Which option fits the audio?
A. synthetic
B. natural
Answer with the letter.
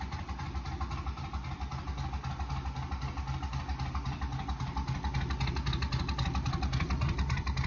B